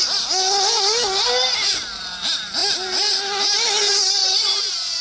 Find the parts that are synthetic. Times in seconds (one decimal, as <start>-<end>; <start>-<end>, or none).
none